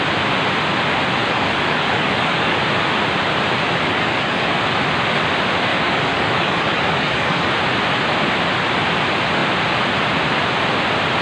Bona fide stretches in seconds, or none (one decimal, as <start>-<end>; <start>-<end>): 0.0-1.2; 2.6-3.9; 4.6-5.7; 7.5-11.2